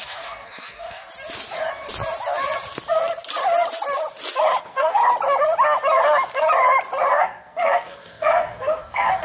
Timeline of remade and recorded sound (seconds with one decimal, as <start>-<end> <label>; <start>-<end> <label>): 0.0-1.1 remade; 1.1-4.6 recorded; 4.6-5.0 remade; 5.0-7.1 recorded; 7.1-9.2 remade